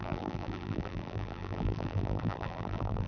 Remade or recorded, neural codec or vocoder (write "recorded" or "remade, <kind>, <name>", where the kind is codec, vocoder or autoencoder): remade, vocoder, BigVGAN v2